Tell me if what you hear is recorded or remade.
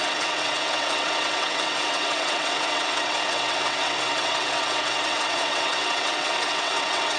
remade